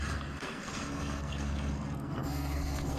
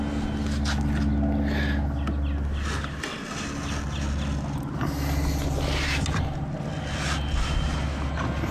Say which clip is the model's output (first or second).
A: first